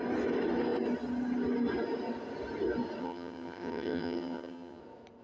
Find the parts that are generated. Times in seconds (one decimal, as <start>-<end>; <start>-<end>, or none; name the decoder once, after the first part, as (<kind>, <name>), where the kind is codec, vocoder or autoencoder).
3.0-4.8 (vocoder, HiFi-GAN)